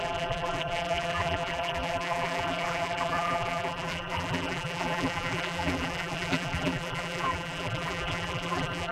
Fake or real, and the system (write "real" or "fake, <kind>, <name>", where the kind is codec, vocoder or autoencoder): fake, vocoder, BigVGAN v2